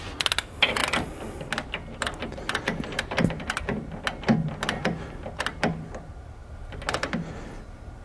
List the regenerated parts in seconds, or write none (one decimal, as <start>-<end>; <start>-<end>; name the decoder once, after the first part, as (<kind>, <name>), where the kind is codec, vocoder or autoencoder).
none